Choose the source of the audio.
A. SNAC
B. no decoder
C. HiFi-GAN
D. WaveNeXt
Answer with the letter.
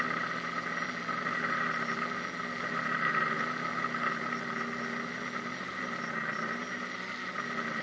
B